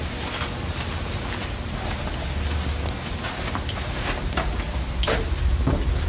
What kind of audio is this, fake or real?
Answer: real